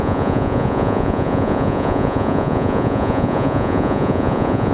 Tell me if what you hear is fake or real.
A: fake